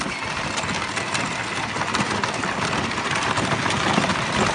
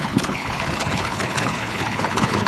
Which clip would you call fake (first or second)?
second